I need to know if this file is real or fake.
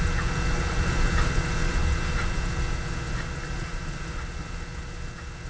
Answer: real